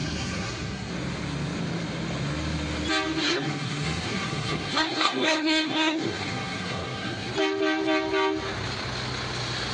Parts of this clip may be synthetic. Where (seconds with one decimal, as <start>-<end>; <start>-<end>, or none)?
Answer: 0.0-0.9; 3.2-7.3